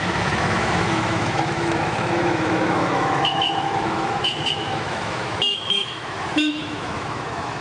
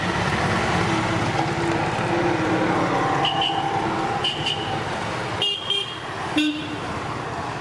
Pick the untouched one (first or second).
second